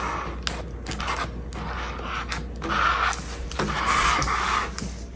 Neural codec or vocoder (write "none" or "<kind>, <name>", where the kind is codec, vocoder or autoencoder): none